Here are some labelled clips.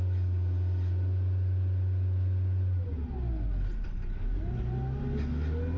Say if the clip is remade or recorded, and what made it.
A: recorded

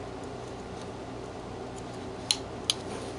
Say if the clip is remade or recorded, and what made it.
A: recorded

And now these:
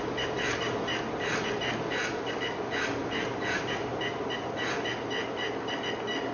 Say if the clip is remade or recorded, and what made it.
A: recorded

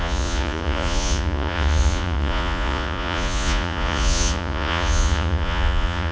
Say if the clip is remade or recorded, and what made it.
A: remade, vocoder, Vocos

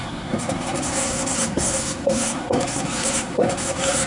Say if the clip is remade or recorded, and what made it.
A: remade, codec, SNAC